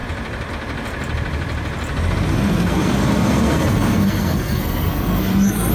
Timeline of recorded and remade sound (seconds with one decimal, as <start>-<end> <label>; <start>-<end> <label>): 0.0-2.3 recorded; 2.3-5.7 remade